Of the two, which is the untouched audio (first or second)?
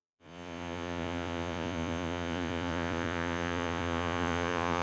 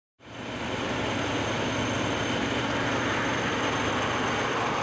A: second